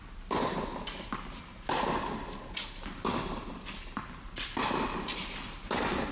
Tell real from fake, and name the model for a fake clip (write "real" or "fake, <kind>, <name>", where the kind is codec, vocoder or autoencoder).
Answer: real